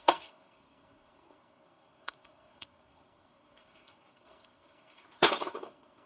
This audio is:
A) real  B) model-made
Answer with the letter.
B